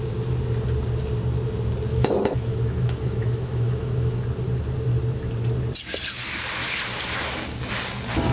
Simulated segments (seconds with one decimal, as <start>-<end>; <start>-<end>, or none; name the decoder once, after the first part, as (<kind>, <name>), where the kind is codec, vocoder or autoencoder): 1.9-4.2 (autoencoder, DAC-VAE)